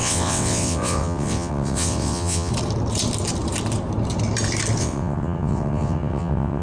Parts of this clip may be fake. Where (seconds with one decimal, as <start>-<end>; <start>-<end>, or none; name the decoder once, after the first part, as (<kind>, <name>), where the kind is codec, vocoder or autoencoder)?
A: 0.0-2.5 (vocoder, WaveNeXt); 4.8-6.6